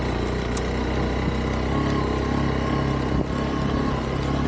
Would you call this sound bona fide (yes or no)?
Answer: yes